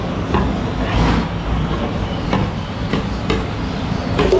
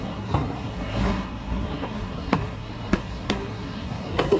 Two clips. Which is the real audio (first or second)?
first